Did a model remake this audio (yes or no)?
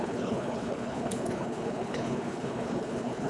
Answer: yes